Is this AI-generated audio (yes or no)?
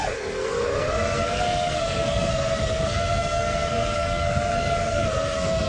yes